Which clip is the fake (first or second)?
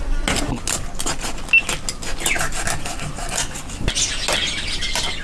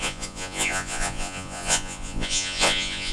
second